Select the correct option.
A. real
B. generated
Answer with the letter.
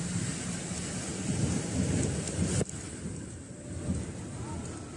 A